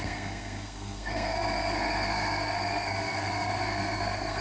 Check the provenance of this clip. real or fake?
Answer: fake